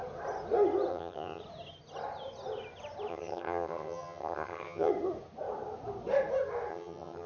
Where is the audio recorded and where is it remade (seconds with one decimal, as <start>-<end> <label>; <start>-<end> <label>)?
0.0-0.9 recorded; 0.9-1.4 remade; 1.4-3.1 recorded; 3.1-4.9 remade; 4.9-6.7 recorded; 6.7-7.3 remade